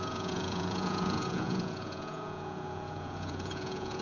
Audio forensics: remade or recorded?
remade